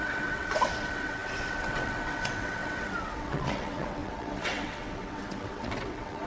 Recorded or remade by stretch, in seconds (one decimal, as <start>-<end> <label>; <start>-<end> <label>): 0.0-6.3 remade